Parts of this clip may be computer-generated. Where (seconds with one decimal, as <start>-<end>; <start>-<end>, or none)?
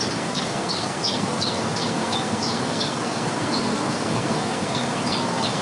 0.0-5.6